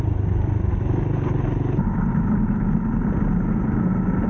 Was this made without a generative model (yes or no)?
yes